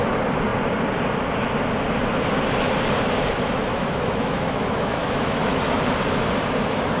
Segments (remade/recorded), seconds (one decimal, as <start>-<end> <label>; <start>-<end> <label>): 0.0-3.7 recorded; 3.7-5.6 remade; 5.6-7.0 recorded